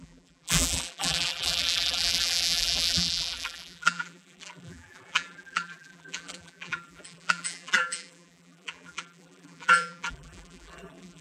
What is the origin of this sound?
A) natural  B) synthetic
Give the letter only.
B